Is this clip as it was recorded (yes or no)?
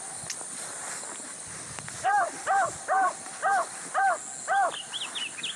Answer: yes